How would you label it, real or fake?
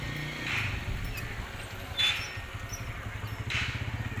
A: real